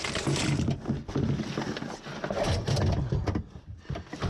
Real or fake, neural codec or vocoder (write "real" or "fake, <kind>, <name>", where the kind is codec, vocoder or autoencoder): real